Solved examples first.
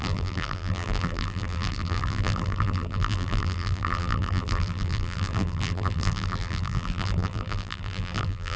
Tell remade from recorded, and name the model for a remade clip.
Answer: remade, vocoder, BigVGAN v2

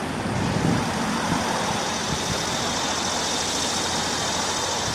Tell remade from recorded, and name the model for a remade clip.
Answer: recorded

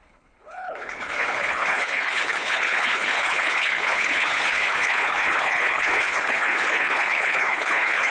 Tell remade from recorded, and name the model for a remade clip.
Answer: remade, codec, HILCodec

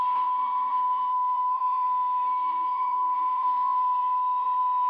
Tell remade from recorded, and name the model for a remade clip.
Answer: remade, codec, SNAC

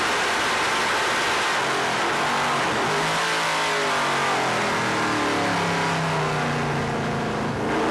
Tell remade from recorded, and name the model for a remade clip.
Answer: recorded